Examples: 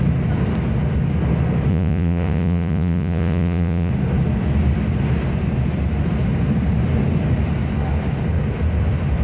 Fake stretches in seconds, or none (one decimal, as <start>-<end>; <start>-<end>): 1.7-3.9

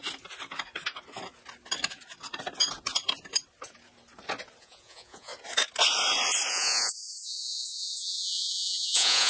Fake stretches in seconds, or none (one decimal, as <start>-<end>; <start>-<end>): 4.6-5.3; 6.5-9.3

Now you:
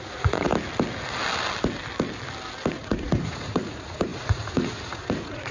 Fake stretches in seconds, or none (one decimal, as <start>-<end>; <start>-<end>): 0.0-0.5; 2.7-5.5

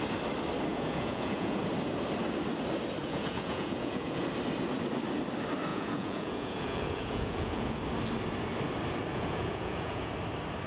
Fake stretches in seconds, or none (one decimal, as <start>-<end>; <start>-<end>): 0.7-1.6; 3.0-4.2; 5.7-7.8; 9.1-10.1

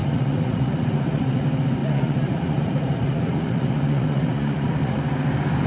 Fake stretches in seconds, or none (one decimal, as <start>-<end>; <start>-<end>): 0.0-1.4; 1.8-5.0

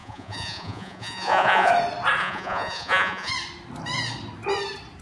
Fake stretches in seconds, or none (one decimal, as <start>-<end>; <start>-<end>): 0.0-1.7; 2.2-3.3

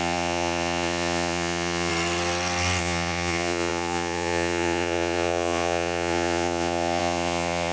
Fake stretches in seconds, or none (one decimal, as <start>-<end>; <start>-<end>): 0.0-1.9; 2.8-7.7

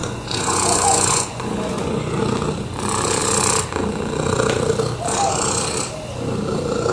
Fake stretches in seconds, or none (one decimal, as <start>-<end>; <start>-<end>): 0.0-2.2